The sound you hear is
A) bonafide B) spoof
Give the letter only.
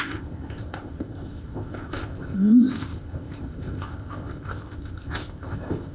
B